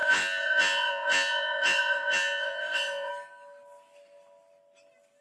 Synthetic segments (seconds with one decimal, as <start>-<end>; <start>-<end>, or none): 0.0-3.1